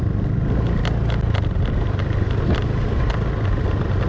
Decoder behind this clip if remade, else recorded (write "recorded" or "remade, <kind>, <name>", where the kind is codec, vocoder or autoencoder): recorded